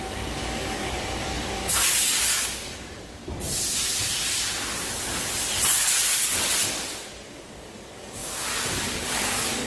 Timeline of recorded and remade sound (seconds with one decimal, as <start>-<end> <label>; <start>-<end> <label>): 0.0-3.2 remade; 3.2-7.3 recorded; 7.3-9.7 remade